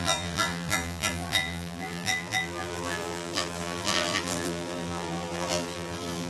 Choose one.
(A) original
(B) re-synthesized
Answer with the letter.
B